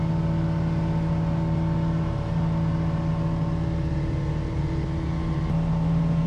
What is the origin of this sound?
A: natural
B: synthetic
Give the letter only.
A